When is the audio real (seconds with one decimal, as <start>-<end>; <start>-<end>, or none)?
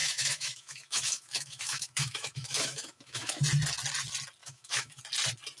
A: 3.4-4.4; 5.0-5.6